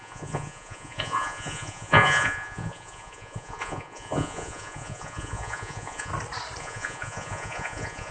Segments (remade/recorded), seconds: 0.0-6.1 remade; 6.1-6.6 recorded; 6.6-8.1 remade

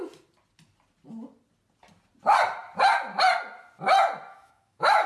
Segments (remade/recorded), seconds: 0.0-4.3 recorded; 4.3-5.1 remade

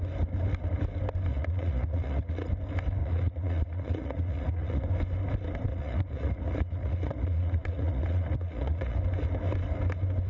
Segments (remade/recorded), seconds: 0.0-1.3 recorded; 1.3-2.5 remade; 2.5-3.0 recorded; 3.0-4.8 remade; 4.8-5.7 recorded; 5.7-9.0 remade; 9.0-10.3 recorded